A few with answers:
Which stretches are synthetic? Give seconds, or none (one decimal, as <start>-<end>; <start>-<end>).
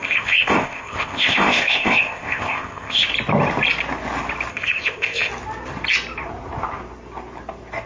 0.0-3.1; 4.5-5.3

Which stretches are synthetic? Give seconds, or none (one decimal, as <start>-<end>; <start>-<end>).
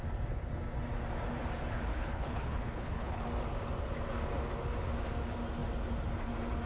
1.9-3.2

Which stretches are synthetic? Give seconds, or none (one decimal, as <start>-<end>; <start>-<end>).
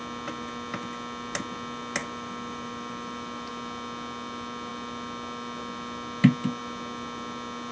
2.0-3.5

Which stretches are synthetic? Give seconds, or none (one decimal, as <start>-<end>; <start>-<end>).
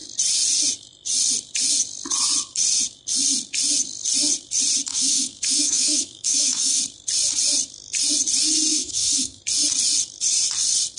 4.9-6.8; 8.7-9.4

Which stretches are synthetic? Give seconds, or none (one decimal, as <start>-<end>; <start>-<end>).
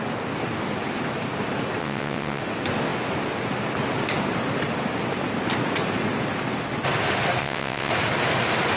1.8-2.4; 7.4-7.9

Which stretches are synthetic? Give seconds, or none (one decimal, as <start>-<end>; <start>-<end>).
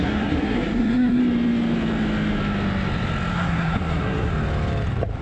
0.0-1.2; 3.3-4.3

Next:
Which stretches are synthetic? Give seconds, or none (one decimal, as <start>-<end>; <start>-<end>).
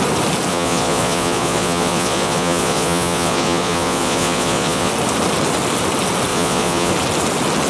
0.5-4.9; 6.3-6.9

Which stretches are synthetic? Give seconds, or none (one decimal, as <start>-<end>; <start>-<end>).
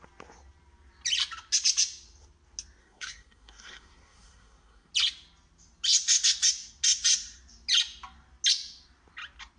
2.8-4.9